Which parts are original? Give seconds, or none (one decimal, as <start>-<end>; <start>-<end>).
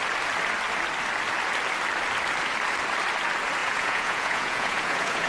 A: 0.0-3.6